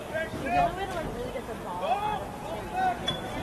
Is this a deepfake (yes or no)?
no